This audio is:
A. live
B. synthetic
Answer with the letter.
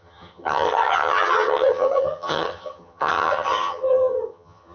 B